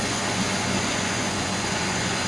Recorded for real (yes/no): no